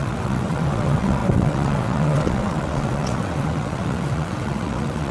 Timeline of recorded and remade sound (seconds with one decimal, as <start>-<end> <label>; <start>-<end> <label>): 0.0-5.1 remade